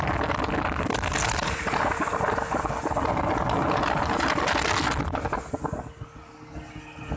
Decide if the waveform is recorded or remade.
recorded